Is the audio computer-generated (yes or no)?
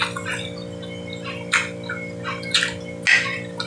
no